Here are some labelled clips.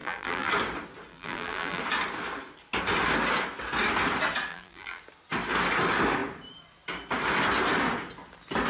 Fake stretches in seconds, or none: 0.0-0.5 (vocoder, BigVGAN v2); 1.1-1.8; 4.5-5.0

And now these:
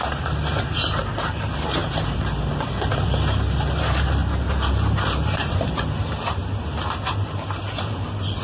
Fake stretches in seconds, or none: 0.0-6.4 (vocoder, BigVGAN v2)

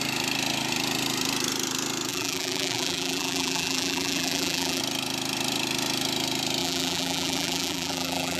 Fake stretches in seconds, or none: 2.1-4.8 (vocoder, BigVGAN v2); 6.6-8.4

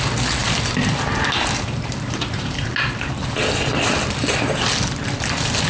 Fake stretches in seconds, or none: 0.4-2.7 (vocoder, BigVGAN v2)